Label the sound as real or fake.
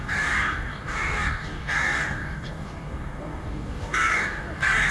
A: fake